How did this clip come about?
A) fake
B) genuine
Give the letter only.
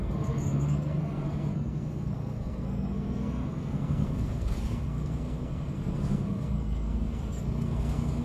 A